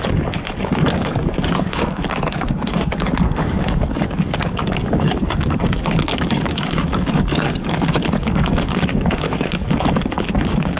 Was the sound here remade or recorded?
remade